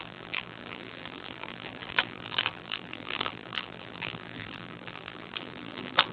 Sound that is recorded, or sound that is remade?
remade